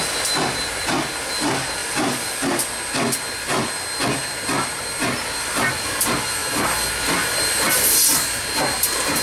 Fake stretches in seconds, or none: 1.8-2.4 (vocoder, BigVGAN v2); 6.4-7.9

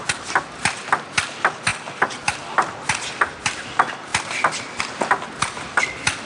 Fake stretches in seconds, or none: 4.1-4.8 (vocoder, BigVGAN v2)